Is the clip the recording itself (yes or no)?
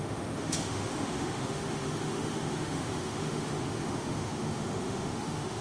no